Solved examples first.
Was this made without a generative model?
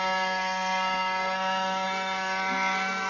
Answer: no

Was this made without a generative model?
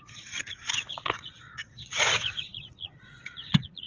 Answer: no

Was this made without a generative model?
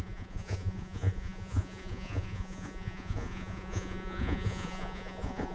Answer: no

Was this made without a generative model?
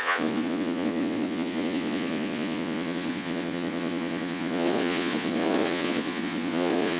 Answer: no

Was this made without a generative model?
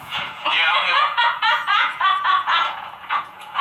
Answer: no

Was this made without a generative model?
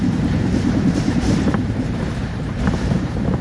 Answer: no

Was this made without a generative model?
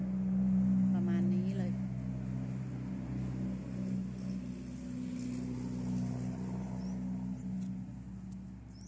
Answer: yes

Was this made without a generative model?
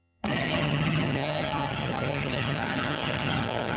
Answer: no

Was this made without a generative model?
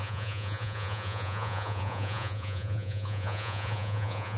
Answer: no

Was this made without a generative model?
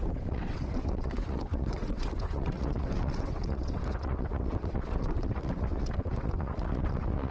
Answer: no